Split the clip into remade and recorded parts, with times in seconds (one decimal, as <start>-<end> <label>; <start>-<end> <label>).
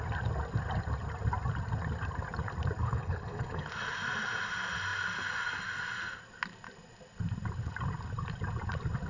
0.0-2.8 recorded; 2.8-3.7 remade; 3.7-9.1 recorded